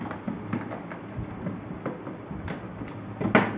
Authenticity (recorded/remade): recorded